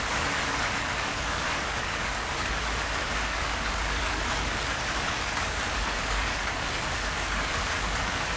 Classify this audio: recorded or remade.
remade